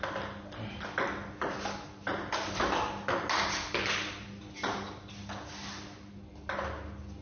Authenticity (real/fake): real